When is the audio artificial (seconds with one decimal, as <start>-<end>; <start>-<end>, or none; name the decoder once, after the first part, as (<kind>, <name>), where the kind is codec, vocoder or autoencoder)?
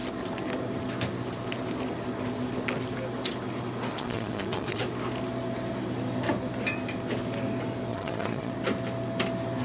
3.9-4.8 (vocoder, Vocos); 7.9-8.5